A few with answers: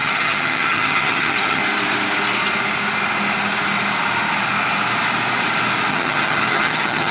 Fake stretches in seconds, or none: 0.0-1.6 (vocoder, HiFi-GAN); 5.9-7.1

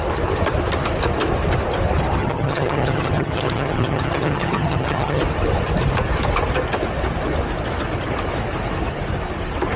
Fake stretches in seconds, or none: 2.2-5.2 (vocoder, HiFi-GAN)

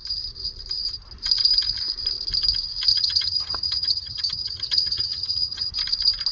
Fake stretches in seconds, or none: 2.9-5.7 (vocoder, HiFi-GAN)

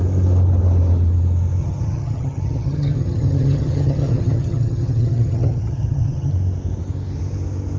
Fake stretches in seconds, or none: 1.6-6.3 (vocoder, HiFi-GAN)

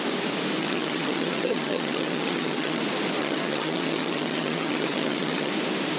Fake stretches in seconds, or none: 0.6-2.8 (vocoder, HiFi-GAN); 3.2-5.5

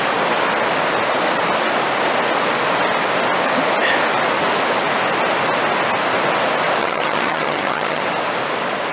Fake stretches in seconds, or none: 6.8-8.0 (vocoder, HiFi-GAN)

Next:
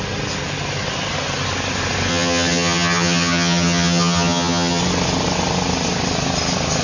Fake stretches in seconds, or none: 2.1-4.8 (vocoder, HiFi-GAN)

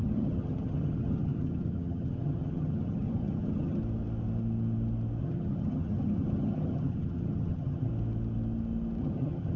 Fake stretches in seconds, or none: 0.0-3.8 (vocoder, HiFi-GAN); 5.2-7.9; 9.0-9.6